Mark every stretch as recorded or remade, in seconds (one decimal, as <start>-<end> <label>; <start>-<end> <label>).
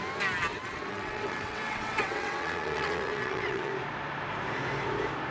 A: 0.0-0.5 recorded; 0.5-3.7 remade; 3.7-5.3 recorded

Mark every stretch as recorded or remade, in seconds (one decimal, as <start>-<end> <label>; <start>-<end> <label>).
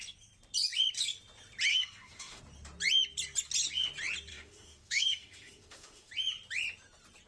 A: 0.0-1.7 recorded; 1.7-2.4 remade; 2.4-4.3 recorded; 4.3-6.1 remade; 6.1-7.3 recorded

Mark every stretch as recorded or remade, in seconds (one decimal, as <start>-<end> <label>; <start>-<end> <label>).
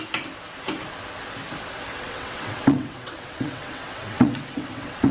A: 0.0-1.9 recorded; 1.9-5.1 remade